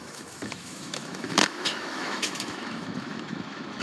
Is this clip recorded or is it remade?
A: remade